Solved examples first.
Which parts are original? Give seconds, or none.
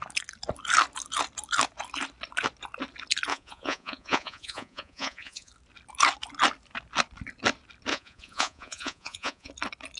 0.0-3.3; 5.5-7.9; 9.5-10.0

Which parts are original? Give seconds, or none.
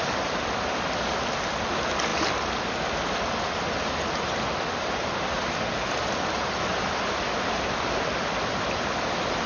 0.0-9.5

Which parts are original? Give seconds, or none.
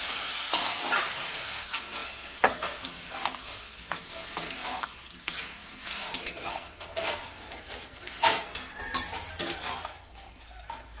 0.8-1.3; 8.8-9.4